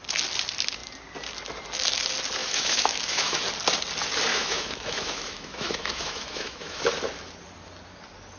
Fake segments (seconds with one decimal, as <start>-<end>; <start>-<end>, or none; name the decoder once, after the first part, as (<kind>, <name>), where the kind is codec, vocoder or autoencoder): 2.4-3.4 (autoencoder, DAC-VAE); 4.3-6.9

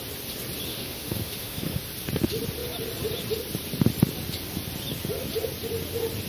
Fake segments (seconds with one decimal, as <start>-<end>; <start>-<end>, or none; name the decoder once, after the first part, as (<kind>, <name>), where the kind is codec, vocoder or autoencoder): 0.7-1.8 (autoencoder, DAC-VAE)